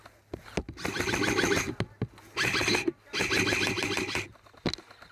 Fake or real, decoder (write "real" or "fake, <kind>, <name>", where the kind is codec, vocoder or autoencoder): real